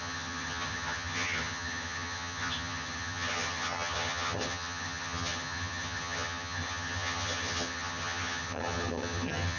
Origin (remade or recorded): remade